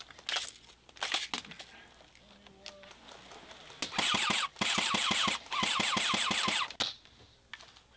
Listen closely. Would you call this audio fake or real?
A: real